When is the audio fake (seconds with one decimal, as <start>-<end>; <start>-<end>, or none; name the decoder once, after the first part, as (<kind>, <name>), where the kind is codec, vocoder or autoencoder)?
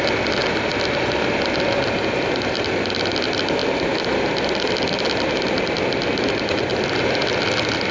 none